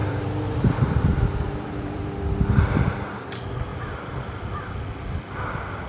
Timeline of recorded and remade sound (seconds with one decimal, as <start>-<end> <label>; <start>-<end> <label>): 0.0-2.1 remade; 2.1-3.7 recorded; 3.7-4.3 remade; 4.3-5.9 recorded